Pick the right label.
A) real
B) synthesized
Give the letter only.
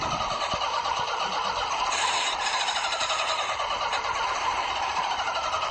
B